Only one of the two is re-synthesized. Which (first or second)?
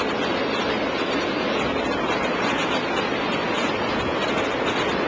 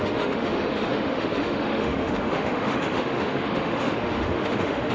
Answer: second